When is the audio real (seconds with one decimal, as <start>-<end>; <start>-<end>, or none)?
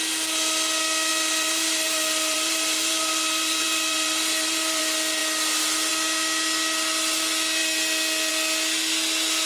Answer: 0.0-1.1; 4.8-9.5